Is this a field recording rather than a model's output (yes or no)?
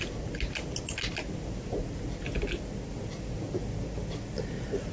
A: yes